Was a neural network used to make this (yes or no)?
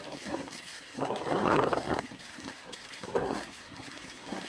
yes